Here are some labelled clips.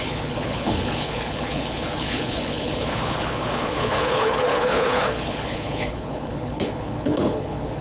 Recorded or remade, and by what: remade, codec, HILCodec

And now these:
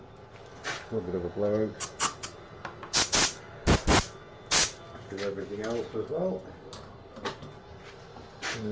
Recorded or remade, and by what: recorded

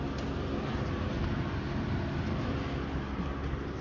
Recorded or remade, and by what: recorded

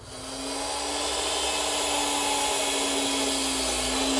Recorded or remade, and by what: recorded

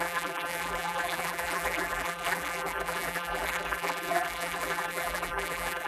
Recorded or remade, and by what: remade, vocoder, BigVGAN v2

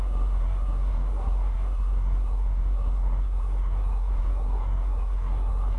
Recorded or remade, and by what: remade, codec, SNAC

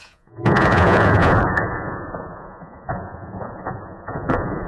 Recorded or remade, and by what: remade, vocoder, Vocos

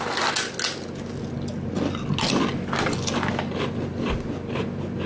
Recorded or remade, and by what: recorded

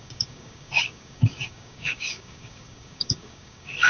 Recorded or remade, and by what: remade, codec, DAC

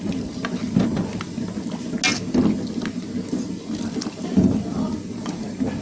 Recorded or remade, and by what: recorded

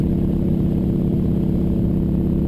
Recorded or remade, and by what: recorded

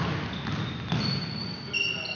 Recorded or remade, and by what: recorded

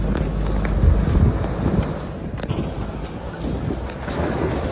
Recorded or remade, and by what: recorded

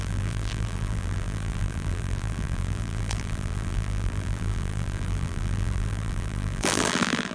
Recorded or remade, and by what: remade, vocoder, BigVGAN v2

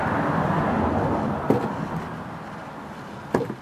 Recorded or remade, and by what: recorded